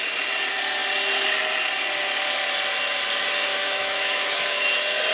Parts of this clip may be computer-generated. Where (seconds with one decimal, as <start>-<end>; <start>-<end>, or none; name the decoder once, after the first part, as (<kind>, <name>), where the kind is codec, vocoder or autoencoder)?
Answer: 3.5-4.6 (autoencoder, DAC-VAE)